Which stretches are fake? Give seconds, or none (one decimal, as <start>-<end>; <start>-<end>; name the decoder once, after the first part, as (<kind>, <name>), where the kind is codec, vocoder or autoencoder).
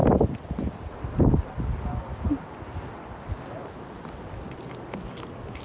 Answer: none